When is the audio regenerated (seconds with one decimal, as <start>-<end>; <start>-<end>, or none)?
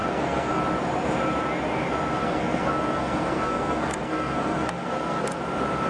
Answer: 0.0-0.6; 2.2-5.4